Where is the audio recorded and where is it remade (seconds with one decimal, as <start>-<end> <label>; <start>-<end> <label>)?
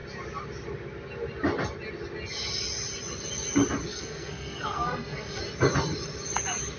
0.0-3.9 recorded; 3.9-5.4 remade; 5.4-6.8 recorded